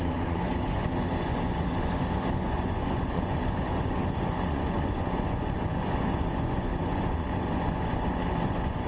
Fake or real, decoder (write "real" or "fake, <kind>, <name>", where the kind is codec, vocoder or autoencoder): fake, vocoder, Vocos